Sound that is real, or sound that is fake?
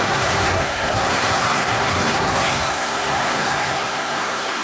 fake